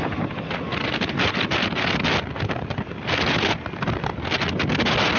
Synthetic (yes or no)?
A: no